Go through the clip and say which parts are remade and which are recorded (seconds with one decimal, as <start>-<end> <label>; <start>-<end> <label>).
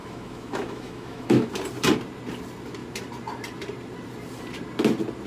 0.0-1.5 remade; 1.5-5.3 recorded